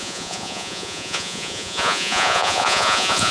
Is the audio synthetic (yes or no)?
yes